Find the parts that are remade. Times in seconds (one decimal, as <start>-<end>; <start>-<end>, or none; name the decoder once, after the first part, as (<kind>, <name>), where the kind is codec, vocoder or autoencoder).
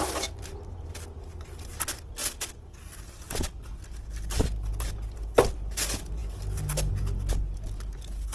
none